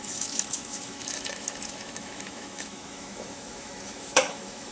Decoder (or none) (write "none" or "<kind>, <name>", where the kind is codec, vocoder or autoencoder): autoencoder, DAC-VAE